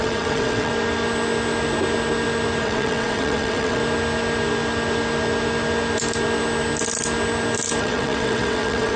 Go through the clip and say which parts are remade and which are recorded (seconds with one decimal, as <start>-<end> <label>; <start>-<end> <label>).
0.0-0.7 remade; 0.7-2.6 recorded; 2.6-3.8 remade; 3.8-7.8 recorded; 7.8-9.0 remade

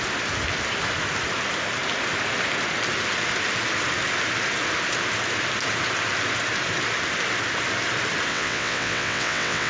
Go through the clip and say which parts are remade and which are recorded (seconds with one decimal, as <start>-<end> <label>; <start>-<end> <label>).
0.0-8.3 recorded; 8.3-9.7 remade